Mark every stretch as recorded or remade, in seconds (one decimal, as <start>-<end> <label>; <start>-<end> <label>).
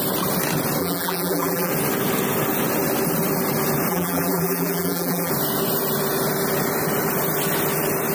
0.0-0.8 recorded; 0.8-1.7 remade; 1.7-3.9 recorded; 3.9-5.3 remade; 5.3-8.1 recorded